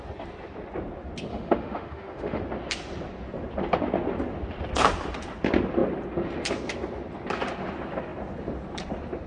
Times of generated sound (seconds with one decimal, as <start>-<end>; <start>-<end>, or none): 1.3-2.4